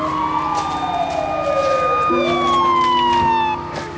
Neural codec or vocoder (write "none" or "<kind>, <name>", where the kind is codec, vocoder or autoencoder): none